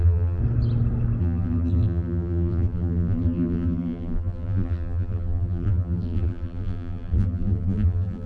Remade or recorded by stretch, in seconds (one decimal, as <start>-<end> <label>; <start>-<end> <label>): 0.0-0.4 remade; 0.4-1.2 recorded; 1.2-8.3 remade